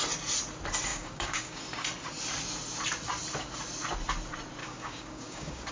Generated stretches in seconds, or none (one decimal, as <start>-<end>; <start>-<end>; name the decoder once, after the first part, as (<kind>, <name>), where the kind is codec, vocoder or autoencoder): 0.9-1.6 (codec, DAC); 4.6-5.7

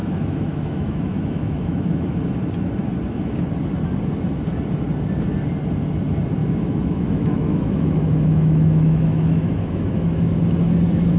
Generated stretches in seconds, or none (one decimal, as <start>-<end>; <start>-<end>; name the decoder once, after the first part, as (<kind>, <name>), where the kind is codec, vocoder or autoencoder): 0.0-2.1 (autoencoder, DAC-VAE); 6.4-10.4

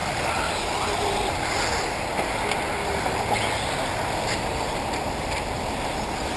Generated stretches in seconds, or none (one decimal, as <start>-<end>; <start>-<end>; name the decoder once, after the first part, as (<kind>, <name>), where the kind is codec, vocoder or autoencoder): none